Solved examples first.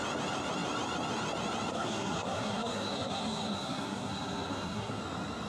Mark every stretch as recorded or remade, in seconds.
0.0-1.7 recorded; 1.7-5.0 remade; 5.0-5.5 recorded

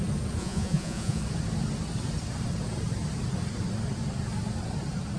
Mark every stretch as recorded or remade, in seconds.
0.0-0.4 recorded; 0.4-1.2 remade; 1.2-5.2 recorded

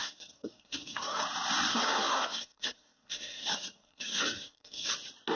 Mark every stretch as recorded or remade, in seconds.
0.0-1.2 remade; 1.2-1.7 recorded; 1.7-4.9 remade; 4.9-5.4 recorded

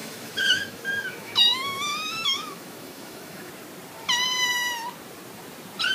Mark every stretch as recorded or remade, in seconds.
0.0-3.5 remade; 3.5-5.9 recorded

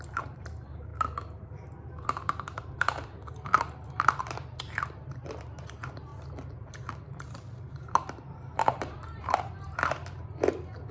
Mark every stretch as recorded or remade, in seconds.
0.0-0.9 remade; 0.9-1.9 recorded; 1.9-6.1 remade; 6.1-7.2 recorded; 7.2-10.9 remade